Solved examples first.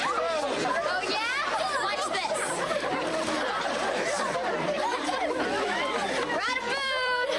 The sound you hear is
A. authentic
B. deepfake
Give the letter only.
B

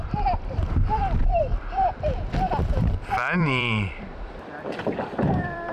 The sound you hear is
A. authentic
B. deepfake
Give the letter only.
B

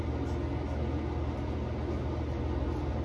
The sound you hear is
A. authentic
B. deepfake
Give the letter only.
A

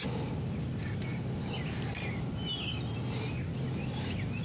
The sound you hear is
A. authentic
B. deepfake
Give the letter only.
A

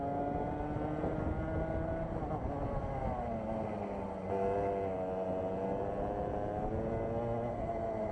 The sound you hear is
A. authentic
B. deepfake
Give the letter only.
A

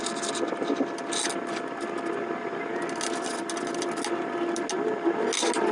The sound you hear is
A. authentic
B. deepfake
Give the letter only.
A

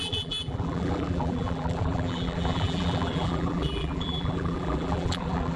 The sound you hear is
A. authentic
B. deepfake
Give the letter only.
B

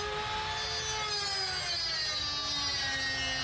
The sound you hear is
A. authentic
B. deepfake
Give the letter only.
A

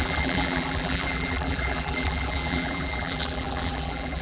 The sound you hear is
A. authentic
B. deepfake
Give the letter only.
B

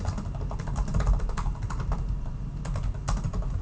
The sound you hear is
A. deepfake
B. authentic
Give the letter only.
B